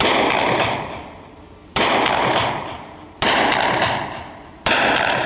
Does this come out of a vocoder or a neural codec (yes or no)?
no